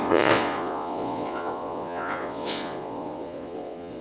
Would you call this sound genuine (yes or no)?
no